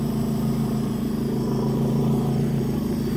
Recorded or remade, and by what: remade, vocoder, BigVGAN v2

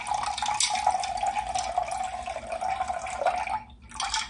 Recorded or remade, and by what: recorded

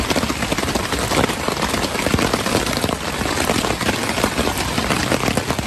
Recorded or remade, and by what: recorded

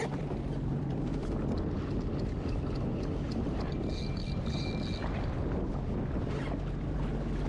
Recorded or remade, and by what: recorded